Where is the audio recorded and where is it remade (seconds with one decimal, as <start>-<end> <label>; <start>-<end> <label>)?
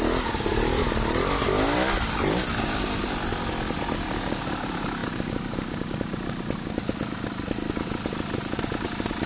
0.0-9.3 recorded